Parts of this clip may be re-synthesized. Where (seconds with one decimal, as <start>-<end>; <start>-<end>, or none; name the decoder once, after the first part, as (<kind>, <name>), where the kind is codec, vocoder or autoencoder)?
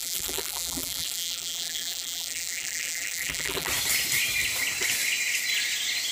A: 0.0-3.7 (vocoder, BigVGAN v2)